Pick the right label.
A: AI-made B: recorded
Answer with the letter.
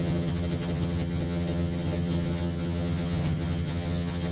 A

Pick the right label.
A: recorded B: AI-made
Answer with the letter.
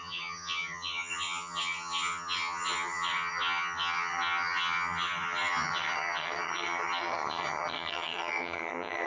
B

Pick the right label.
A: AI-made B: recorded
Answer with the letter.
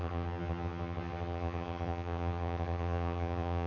A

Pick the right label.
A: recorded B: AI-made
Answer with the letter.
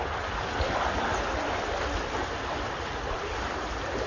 A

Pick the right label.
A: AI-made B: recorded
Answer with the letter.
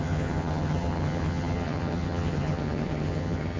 A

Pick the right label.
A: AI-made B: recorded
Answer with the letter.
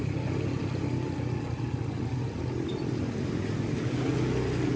B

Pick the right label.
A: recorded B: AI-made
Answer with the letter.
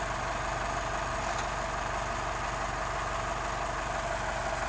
A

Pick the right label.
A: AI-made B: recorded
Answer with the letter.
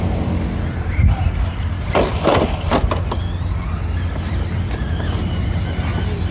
B